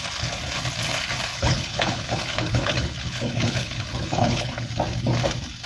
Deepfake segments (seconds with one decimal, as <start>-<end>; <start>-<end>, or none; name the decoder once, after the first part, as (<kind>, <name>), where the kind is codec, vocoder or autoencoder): 1.3-4.7 (codec, HILCodec)